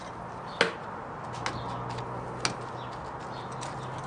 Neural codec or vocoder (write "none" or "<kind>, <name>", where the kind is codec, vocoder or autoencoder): none